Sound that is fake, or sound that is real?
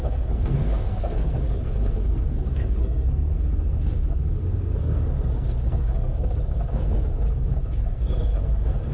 fake